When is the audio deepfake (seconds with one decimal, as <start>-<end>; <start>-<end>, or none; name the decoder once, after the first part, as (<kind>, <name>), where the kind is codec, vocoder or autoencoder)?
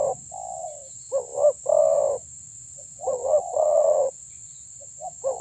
2.5-4.8 (vocoder, Vocos)